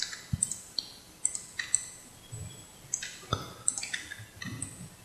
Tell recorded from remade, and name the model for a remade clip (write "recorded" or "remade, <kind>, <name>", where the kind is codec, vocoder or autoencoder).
recorded